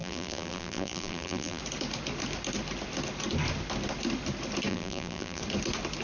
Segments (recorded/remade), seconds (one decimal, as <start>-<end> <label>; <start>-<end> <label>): 0.0-1.6 remade; 1.6-4.7 recorded; 4.7-5.4 remade; 5.4-6.0 recorded